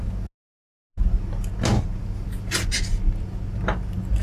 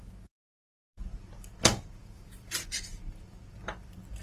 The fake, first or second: second